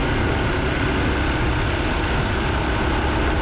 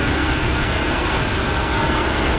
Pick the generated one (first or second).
second